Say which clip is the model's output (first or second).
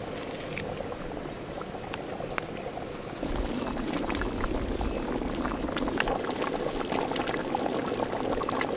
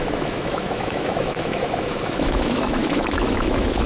second